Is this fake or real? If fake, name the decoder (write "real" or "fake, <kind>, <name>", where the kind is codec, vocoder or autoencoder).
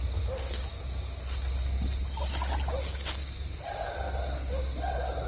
real